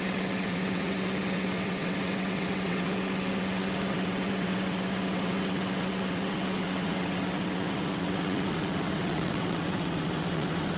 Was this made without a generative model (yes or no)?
no